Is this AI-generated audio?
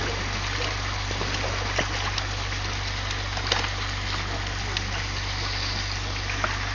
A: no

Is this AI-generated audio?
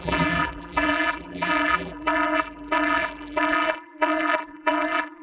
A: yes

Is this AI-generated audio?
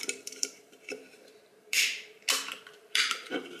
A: yes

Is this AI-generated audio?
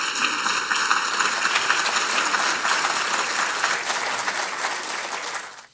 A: no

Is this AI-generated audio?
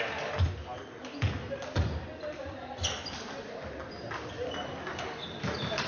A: no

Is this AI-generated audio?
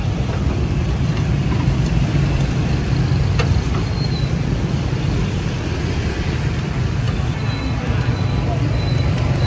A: yes